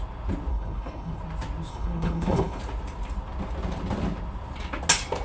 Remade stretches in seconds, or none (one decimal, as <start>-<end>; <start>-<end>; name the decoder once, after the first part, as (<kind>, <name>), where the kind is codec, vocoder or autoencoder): 0.5-1.2 (codec, HILCodec); 1.7-2.6